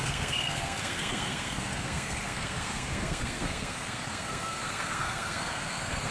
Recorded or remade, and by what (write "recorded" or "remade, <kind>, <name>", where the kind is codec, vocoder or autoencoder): remade, codec, SNAC